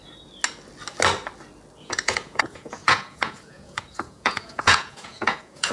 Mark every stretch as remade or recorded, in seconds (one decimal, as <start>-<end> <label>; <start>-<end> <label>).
0.0-1.8 recorded; 1.8-5.7 remade